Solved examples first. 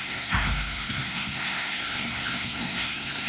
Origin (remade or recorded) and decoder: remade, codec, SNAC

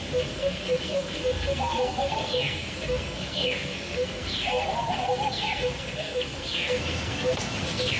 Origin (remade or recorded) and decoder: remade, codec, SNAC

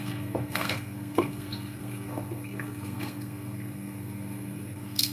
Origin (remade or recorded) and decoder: remade, codec, SNAC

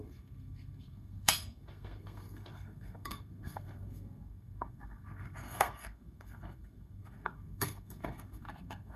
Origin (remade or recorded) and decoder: remade, codec, SNAC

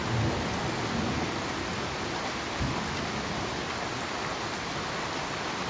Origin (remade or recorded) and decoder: recorded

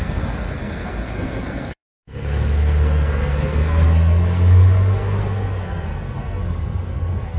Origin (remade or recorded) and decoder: remade, codec, SNAC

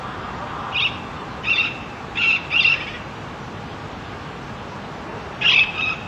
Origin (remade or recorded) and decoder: recorded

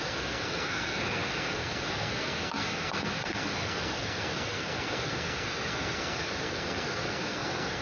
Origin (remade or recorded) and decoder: remade, codec, SNAC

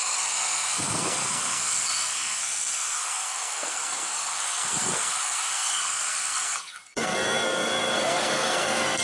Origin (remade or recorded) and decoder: remade, codec, SNAC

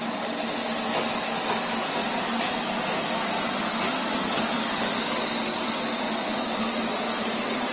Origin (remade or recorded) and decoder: recorded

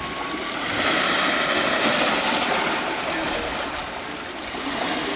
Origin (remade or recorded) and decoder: recorded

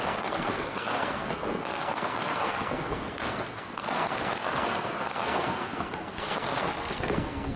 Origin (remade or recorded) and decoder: remade, codec, SNAC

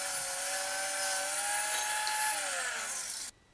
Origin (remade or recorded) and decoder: recorded